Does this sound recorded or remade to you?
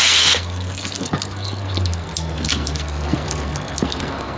remade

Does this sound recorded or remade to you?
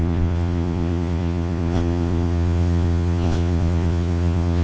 remade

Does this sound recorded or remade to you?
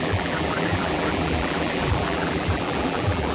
remade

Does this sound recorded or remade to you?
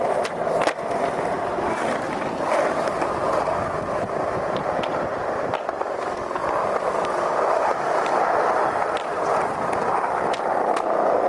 recorded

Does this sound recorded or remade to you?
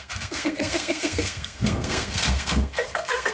remade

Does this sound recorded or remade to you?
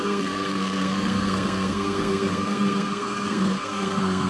remade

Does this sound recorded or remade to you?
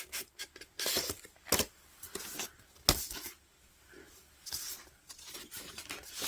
recorded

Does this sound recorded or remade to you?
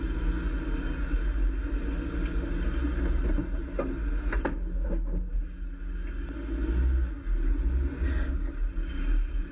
recorded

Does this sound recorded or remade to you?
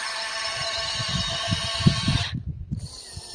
recorded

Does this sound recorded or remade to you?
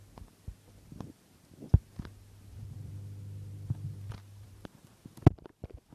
recorded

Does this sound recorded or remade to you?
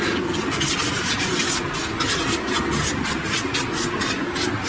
recorded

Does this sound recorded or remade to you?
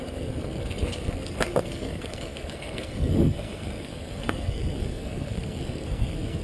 remade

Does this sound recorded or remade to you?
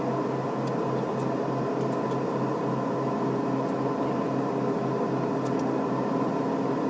recorded